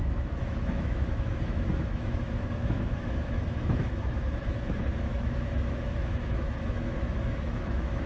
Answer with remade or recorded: remade